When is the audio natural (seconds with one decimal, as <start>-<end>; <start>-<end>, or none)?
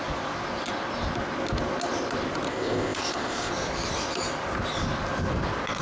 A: 0.0-2.5; 3.5-5.8